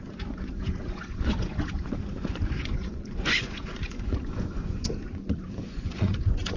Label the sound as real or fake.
fake